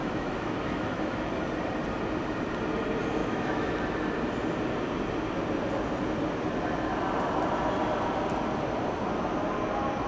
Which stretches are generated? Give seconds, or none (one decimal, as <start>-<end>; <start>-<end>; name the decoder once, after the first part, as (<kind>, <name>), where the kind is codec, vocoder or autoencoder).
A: 0.0-1.3 (autoencoder, DAC-VAE); 3.2-3.8